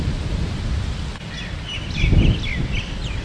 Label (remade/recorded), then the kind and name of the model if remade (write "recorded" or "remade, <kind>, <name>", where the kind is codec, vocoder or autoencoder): remade, vocoder, BigVGAN v2